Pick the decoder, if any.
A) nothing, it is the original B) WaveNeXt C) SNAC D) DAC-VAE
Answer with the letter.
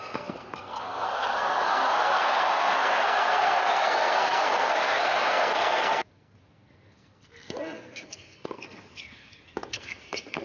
C